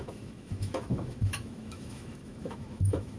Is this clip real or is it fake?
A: fake